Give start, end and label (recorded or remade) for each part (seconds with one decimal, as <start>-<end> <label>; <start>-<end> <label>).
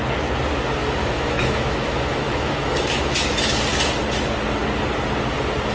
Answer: 0.0-0.8 recorded; 0.8-3.6 remade; 3.6-5.7 recorded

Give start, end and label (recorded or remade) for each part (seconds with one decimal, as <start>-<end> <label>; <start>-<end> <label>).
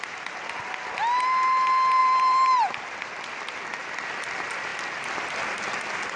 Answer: 0.0-2.0 recorded; 2.0-3.2 remade; 3.2-6.2 recorded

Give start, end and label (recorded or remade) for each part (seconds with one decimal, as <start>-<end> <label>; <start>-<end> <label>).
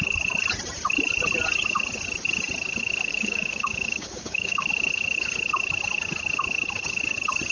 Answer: 0.0-3.1 recorded; 3.1-4.7 remade; 4.7-7.5 recorded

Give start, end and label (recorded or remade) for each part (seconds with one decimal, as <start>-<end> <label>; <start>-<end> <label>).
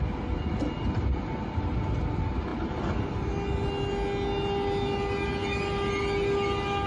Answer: 0.0-6.9 recorded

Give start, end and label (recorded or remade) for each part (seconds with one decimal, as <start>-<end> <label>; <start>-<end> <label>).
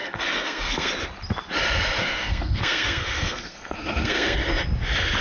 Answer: 0.0-0.9 remade; 0.9-2.0 recorded; 2.0-4.4 remade; 4.4-5.2 recorded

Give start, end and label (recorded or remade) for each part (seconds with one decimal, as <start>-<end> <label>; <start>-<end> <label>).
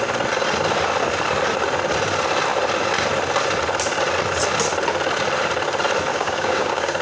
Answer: 0.0-6.1 recorded; 6.1-7.0 remade